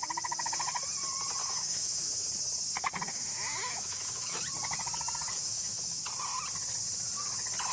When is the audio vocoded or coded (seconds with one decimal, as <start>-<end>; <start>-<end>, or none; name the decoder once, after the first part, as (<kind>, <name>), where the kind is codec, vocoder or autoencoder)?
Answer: 1.4-2.3 (autoencoder, DAC-VAE); 3.1-4.4; 5.4-6.0